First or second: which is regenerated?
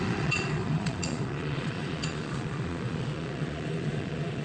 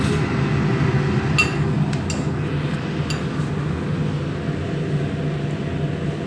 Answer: first